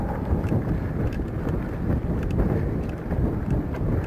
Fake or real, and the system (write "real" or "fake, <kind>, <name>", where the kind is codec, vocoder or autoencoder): fake, vocoder, BigVGAN v2